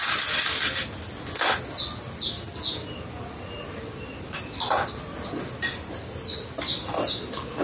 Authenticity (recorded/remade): recorded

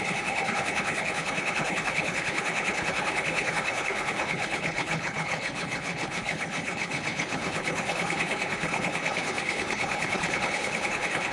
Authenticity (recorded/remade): remade